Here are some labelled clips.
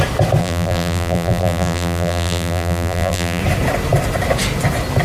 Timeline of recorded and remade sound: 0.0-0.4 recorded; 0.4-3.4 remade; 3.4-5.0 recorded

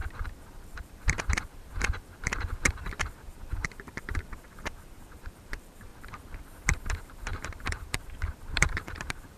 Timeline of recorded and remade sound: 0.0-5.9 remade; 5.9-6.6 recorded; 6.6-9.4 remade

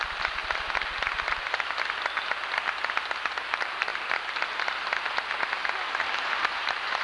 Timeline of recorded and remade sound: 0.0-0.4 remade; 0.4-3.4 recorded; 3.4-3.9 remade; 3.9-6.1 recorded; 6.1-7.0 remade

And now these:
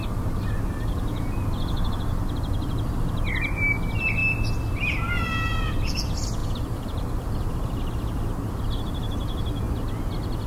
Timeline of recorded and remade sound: 0.0-6.4 recorded; 6.4-7.8 remade; 7.8-10.5 recorded